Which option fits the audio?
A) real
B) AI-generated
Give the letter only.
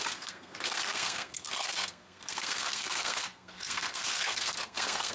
B